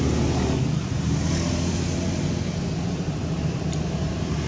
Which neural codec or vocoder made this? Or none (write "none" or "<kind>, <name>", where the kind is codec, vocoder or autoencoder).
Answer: none